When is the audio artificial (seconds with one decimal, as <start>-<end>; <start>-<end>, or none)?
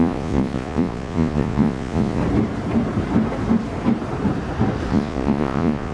0.0-2.2; 4.9-5.9